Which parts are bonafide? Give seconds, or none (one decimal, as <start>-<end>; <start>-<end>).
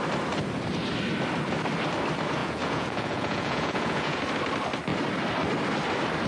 0.0-2.4; 4.2-6.3